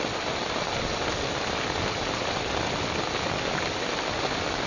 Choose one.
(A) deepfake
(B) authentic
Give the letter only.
B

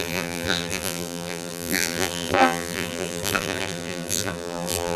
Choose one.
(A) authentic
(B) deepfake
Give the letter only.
B